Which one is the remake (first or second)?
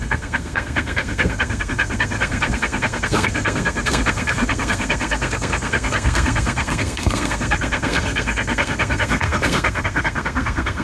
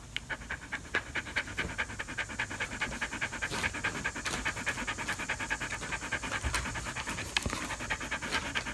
first